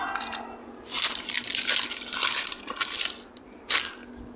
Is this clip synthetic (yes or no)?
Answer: no